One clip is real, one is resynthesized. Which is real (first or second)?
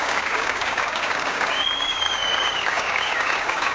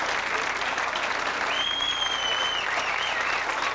second